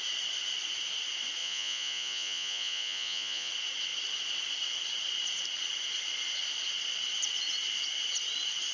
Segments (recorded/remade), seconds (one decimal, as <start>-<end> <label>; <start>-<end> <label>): 0.0-1.4 recorded; 1.4-3.5 remade; 3.5-8.7 recorded